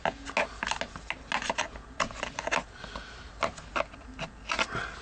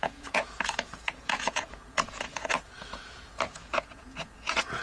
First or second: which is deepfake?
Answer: second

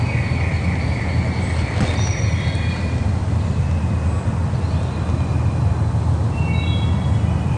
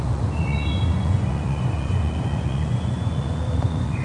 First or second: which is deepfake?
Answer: second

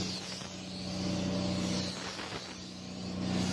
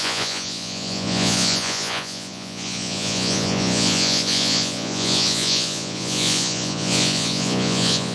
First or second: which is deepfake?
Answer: second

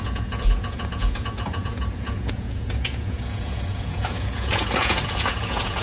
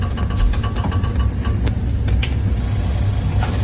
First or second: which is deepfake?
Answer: first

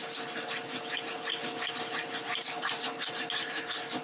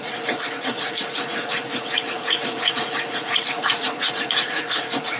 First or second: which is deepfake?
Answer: second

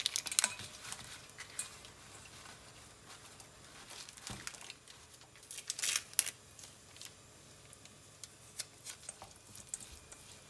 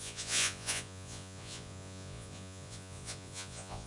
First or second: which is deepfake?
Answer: second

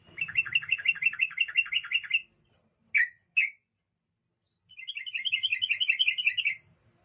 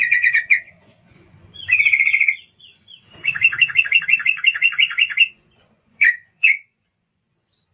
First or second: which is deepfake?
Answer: second